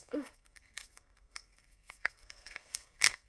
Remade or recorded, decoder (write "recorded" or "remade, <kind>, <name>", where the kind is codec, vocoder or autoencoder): remade, codec, SNAC